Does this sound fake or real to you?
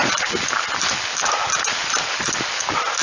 real